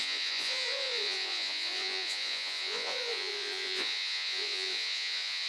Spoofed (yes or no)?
yes